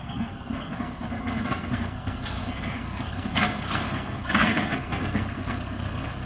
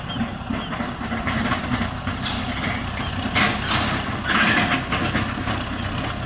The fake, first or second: first